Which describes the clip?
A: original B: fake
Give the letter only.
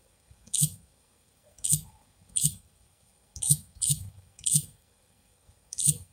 B